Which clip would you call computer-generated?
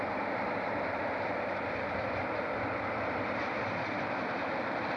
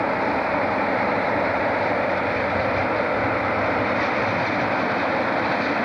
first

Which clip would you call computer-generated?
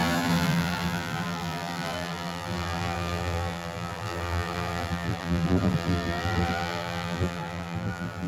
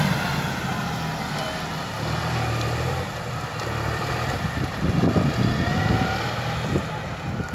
first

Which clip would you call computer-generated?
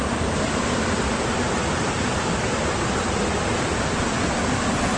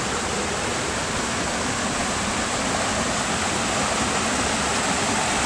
first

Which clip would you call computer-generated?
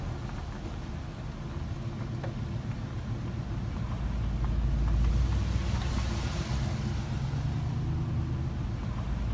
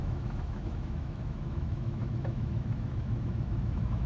second